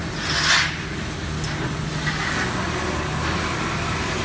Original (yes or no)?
yes